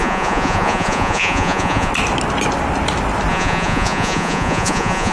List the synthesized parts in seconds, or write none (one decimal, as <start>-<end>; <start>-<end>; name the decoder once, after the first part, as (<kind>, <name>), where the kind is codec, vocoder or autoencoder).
0.0-1.9 (vocoder, Vocos); 3.3-5.1